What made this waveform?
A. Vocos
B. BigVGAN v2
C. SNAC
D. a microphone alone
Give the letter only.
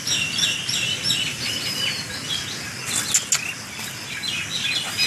D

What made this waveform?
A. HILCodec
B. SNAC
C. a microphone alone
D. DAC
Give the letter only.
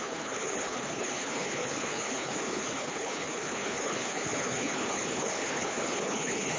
A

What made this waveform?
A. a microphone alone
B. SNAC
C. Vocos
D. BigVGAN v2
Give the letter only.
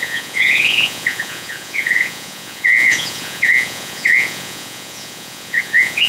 C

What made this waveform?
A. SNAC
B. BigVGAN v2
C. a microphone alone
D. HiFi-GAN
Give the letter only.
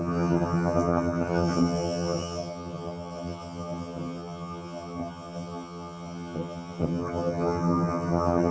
D